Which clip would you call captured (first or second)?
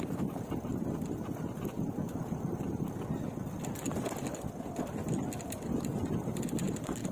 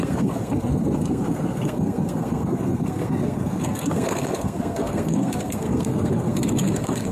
first